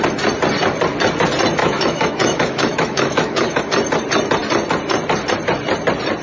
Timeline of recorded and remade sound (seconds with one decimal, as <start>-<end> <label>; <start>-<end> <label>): 0.0-1.6 recorded; 1.6-3.6 remade; 3.6-6.2 recorded